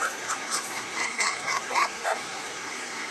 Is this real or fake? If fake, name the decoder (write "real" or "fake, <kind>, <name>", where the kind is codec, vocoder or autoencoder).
fake, codec, SNAC